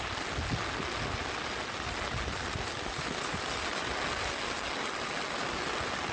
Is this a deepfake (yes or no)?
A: no